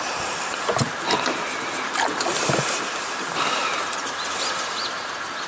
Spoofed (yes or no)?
no